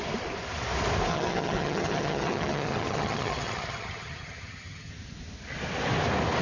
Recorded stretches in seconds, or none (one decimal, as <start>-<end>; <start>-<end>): 0.0-1.1; 4.9-6.4